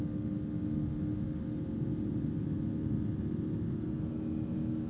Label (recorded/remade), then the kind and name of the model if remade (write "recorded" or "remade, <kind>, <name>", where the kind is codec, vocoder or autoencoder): recorded